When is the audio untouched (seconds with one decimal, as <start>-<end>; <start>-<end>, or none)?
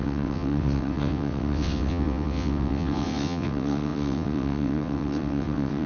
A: none